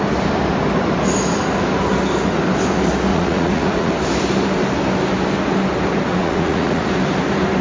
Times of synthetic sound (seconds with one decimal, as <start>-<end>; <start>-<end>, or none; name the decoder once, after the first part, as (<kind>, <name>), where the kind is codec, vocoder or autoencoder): 3.1-3.9 (vocoder, Vocos); 6.1-6.9